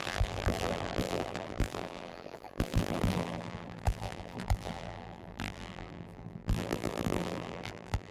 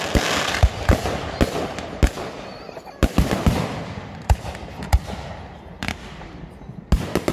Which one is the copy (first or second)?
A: first